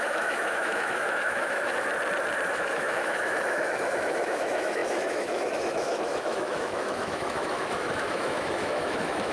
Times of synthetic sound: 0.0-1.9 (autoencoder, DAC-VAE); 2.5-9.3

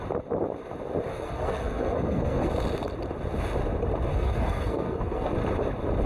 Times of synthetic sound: 1.1-2.5 (codec, SNAC); 4.1-5.3

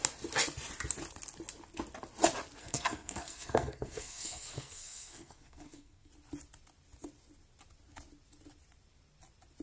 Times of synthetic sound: 2.6-6.1 (codec, SNAC)

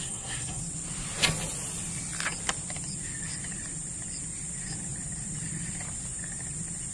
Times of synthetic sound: 0.0-0.6 (codec, SNAC)